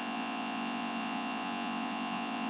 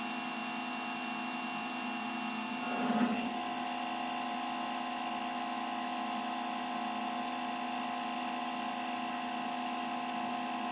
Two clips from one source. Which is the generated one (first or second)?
first